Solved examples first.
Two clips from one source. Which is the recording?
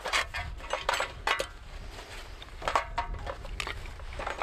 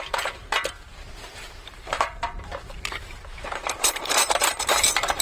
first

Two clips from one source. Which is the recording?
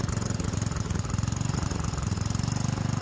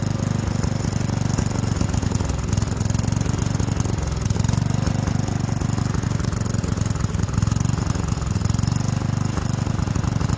second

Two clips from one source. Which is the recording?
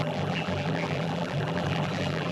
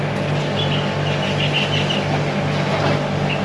second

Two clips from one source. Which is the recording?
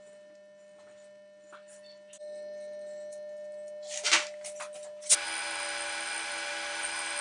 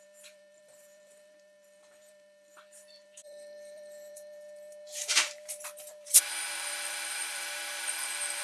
first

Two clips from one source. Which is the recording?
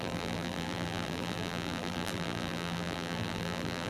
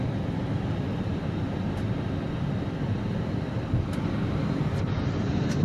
second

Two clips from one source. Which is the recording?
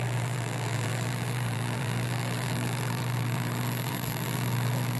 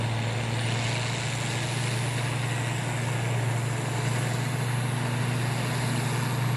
second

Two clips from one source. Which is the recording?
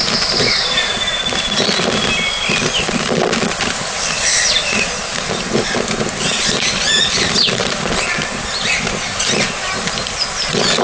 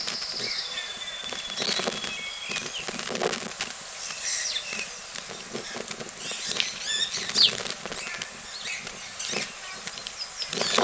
second